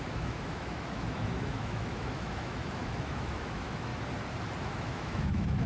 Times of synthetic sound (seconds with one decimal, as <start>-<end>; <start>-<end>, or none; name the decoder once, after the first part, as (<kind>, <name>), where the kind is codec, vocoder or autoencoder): 0.0-3.9 (autoencoder, DAC-VAE); 4.6-5.7